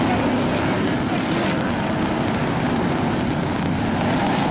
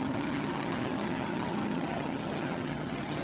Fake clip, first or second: second